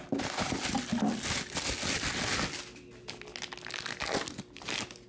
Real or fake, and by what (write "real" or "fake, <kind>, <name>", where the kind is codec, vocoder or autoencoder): real